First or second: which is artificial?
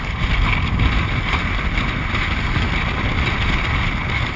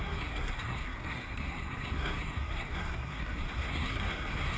second